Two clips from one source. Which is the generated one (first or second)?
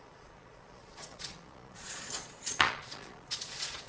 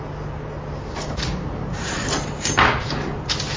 first